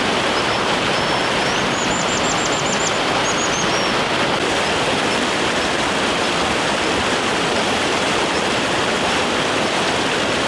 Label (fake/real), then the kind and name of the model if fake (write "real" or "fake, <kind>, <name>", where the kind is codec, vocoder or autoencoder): real